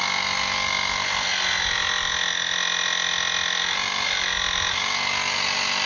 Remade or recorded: recorded